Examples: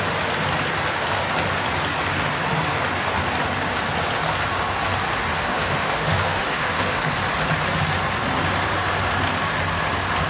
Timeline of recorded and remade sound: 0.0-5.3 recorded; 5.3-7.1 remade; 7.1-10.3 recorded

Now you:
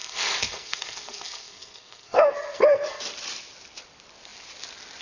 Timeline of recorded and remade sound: 0.0-3.0 remade; 3.0-5.0 recorded